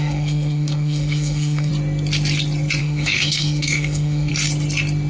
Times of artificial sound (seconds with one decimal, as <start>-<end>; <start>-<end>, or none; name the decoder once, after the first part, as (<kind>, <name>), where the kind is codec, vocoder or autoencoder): 0.0-1.7 (autoencoder, DAC-VAE); 2.8-4.3